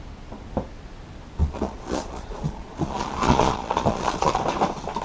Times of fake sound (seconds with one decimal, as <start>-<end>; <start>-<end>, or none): 1.4-4.4